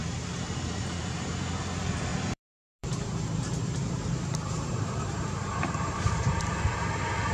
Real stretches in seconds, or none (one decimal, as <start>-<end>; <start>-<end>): 1.3-2.1; 6.4-7.3